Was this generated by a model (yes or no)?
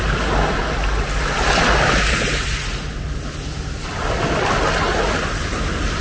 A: no